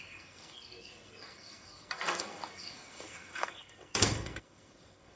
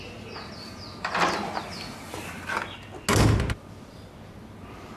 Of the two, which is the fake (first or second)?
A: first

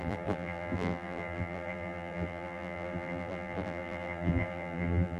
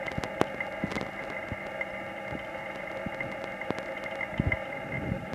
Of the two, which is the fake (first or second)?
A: first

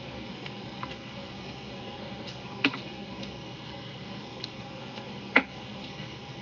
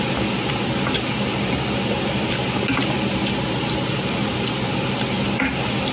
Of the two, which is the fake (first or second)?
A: first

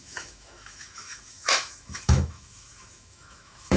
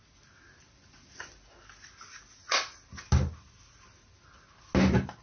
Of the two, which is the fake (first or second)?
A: first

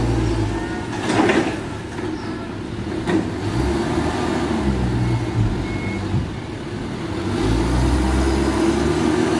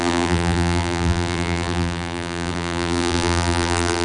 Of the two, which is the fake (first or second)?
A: second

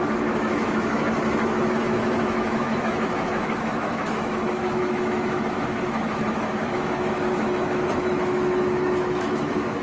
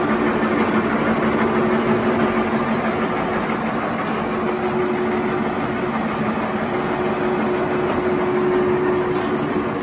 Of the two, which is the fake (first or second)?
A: first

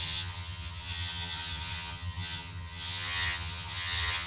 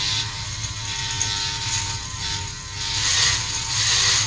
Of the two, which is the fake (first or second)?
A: first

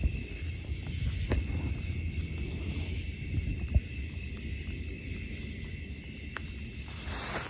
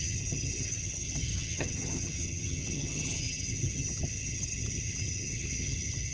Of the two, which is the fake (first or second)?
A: second